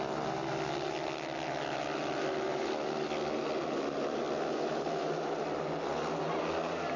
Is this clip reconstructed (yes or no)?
no